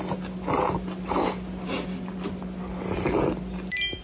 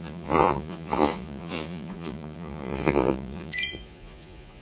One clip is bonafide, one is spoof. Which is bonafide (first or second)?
first